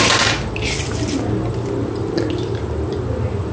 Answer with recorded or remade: recorded